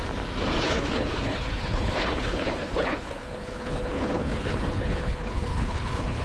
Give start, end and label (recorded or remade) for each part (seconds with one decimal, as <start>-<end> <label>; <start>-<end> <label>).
0.0-0.6 recorded; 0.6-6.2 remade